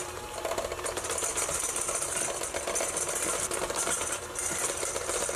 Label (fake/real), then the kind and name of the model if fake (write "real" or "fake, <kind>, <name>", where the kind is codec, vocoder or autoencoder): fake, vocoder, BigVGAN v2